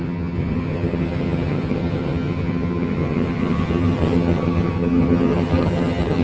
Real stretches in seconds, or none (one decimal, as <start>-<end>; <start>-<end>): none